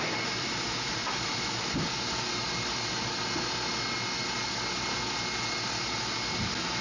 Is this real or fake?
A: real